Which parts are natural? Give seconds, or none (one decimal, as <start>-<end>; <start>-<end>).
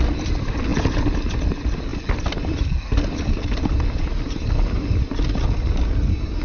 0.0-6.4